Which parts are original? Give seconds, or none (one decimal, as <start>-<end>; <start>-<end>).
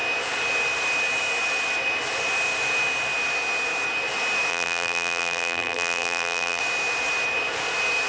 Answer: 0.0-4.5; 6.6-8.1